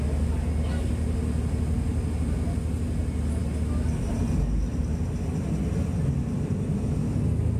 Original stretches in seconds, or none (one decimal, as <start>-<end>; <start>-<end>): 0.0-7.6